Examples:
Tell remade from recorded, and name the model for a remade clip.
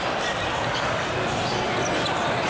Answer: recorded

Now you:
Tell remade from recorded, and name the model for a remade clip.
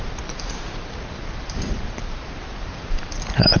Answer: remade, vocoder, BigVGAN v2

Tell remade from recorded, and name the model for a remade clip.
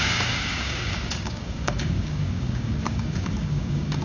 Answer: remade, codec, DAC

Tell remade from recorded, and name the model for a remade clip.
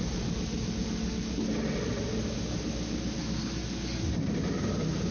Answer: recorded